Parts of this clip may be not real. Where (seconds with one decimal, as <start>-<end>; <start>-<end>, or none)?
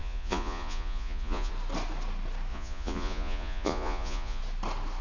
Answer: 0.0-1.5; 2.5-4.4